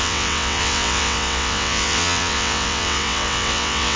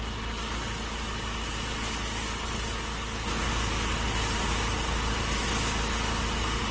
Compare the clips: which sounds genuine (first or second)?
second